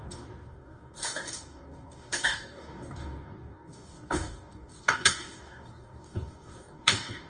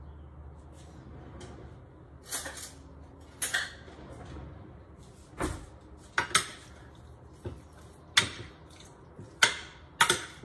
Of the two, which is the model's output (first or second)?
first